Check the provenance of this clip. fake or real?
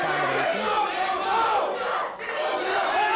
real